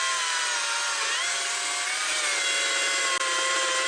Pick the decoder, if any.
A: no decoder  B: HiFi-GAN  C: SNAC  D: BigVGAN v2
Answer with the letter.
A